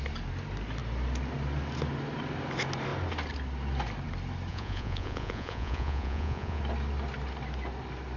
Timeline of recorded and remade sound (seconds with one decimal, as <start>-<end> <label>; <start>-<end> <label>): 0.0-4.5 recorded; 4.5-6.6 remade; 6.6-8.2 recorded